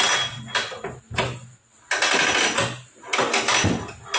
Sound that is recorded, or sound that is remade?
recorded